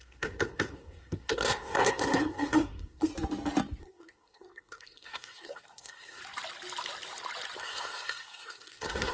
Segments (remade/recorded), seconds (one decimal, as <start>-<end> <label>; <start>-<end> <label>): 0.0-3.1 remade; 3.1-3.8 recorded; 3.8-6.2 remade; 6.2-7.6 recorded; 7.6-9.1 remade